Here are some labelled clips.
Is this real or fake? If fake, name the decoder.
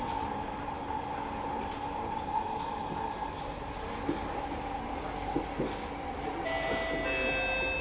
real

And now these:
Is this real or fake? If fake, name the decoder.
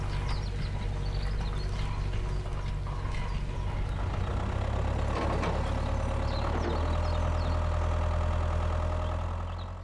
real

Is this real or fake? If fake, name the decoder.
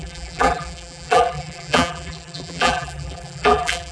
fake, vocoder, BigVGAN v2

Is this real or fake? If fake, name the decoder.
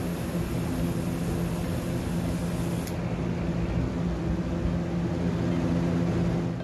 real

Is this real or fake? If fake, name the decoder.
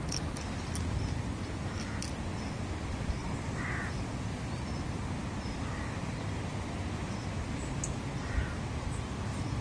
real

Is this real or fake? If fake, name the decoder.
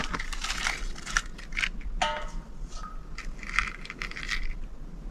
real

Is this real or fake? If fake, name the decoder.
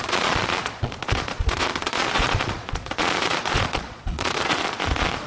fake, vocoder, Vocos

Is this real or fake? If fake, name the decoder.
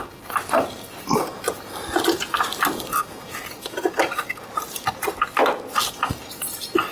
real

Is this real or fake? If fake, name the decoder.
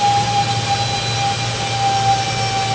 real